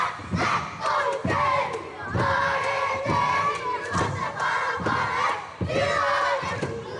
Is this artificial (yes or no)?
yes